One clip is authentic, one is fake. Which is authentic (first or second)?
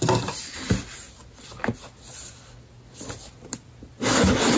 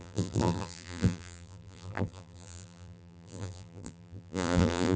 first